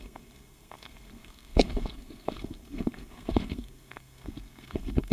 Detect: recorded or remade remade